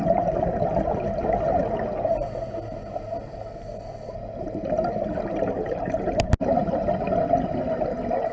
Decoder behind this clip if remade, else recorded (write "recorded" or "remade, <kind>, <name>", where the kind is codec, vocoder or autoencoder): recorded